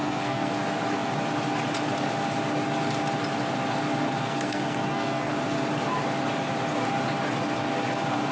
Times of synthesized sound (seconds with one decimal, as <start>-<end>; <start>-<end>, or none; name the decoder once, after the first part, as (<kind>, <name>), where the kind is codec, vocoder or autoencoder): 0.0-0.5 (codec, SNAC); 4.2-5.3

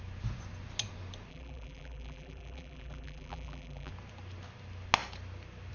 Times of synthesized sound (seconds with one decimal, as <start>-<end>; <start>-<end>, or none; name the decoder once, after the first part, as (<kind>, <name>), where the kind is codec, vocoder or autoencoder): 1.3-3.9 (vocoder, BigVGAN v2)

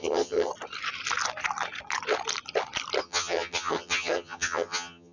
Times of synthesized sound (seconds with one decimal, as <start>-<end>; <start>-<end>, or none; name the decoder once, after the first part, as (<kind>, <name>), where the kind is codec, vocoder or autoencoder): 0.0-0.5 (vocoder, HiFi-GAN); 3.0-5.1

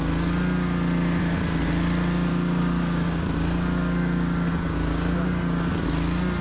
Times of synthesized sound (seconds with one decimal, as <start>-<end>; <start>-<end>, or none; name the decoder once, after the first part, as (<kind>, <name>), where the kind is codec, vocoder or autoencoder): 2.3-5.8 (codec, DAC)

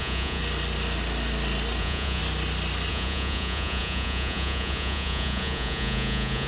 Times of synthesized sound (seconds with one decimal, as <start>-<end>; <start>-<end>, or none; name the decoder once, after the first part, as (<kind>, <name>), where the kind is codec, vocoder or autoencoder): 0.0-0.4 (vocoder, Vocos); 1.8-2.2; 2.9-6.5

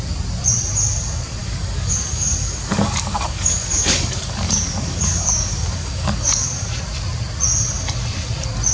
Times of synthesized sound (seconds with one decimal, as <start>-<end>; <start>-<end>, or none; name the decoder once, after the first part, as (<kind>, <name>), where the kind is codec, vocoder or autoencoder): 1.4-6.6 (codec, DAC)

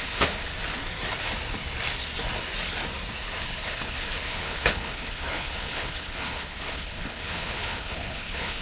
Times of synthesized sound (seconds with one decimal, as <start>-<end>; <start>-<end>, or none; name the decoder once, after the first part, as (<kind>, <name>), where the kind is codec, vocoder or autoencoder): 0.0-0.5 (codec, HILCodec); 3.4-8.6